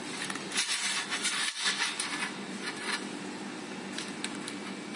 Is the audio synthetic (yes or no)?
no